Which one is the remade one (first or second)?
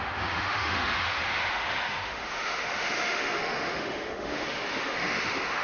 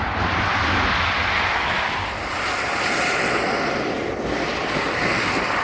first